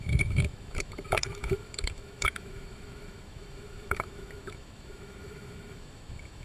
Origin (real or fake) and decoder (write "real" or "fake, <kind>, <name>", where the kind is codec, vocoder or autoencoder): fake, autoencoder, DAC-VAE